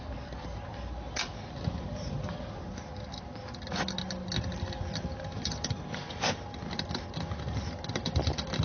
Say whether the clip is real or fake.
real